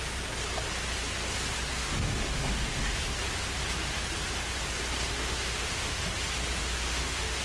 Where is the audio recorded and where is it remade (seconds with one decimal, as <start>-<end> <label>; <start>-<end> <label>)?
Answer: 0.0-1.8 recorded; 1.8-3.0 remade; 3.0-5.1 recorded; 5.1-6.0 remade; 6.0-6.6 recorded; 6.6-7.4 remade